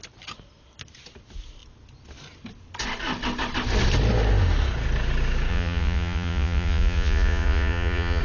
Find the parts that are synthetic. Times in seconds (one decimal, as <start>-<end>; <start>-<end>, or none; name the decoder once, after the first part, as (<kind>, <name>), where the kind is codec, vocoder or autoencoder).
5.5-8.2 (vocoder, Vocos)